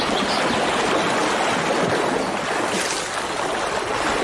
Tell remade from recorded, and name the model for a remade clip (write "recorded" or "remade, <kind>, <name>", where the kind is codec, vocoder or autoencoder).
recorded